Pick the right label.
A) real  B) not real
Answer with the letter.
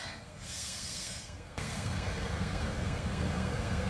B